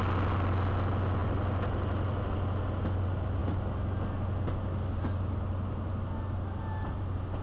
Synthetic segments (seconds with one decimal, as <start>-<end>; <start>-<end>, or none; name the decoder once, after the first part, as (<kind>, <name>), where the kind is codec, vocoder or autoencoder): none